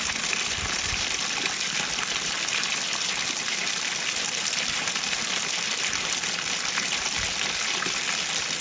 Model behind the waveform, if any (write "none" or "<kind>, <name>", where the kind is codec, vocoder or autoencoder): none